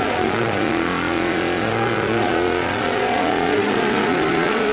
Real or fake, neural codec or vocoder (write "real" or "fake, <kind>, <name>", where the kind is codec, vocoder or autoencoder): fake, vocoder, Vocos